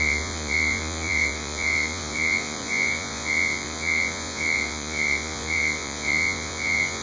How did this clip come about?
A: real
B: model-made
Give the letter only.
B